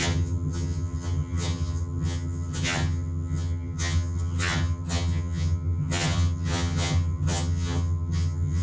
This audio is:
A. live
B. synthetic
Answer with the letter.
B